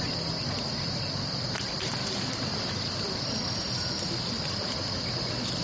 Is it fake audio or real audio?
real